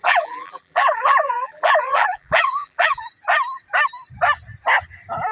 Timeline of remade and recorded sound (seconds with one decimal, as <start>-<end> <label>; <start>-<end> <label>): 0.0-3.0 remade; 3.0-5.3 recorded